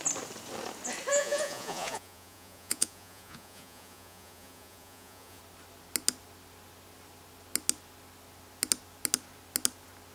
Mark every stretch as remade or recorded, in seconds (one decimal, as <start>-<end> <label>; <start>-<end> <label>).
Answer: 0.0-1.1 recorded; 1.1-5.4 remade; 5.4-10.1 recorded